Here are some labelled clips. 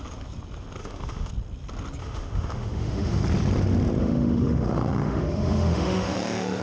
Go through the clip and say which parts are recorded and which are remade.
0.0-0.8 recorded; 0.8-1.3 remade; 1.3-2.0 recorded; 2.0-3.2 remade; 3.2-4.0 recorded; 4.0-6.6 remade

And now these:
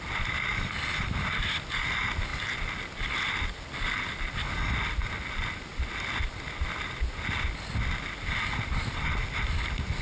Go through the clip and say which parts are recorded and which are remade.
0.0-10.0 recorded

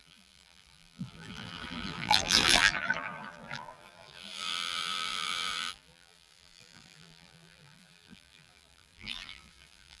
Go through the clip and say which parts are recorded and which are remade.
0.0-10.0 remade

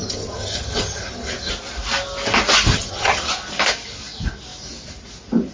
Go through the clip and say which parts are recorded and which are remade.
0.0-1.5 remade; 1.5-2.7 recorded; 2.7-3.3 remade; 3.3-5.5 recorded

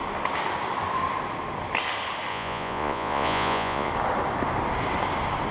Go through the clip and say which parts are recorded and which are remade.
0.0-2.3 recorded; 2.3-3.9 remade; 3.9-5.5 recorded

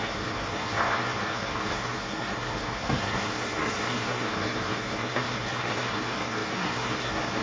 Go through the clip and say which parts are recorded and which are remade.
0.0-7.4 remade